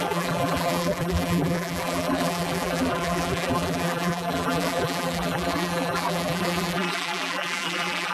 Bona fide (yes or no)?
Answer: no